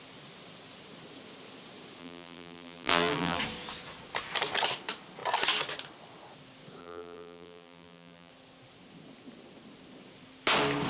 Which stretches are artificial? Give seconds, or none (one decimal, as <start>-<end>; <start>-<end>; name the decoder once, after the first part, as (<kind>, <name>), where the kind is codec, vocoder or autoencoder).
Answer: 2.0-3.4 (vocoder, BigVGAN v2); 6.8-8.3